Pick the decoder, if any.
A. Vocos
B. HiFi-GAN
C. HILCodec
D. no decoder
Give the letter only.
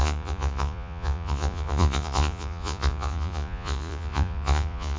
A